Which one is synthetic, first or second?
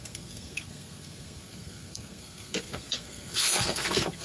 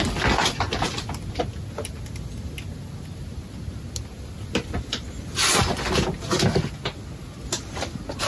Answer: first